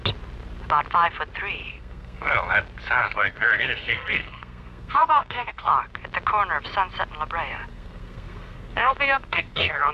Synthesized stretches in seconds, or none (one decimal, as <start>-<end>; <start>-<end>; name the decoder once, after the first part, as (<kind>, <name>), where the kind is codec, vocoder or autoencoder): 1.7-2.3 (codec, SNAC); 3.0-5.7; 7.7-9.9